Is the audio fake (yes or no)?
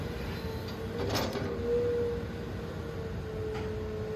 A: no